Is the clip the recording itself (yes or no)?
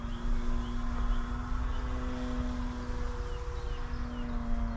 yes